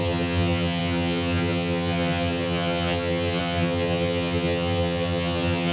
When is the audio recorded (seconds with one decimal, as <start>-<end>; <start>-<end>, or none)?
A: none